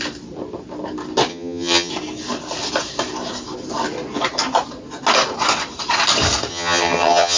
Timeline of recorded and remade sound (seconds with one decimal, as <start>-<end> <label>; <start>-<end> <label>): 0.0-1.3 recorded; 1.3-1.9 remade; 1.9-6.5 recorded; 6.5-7.4 remade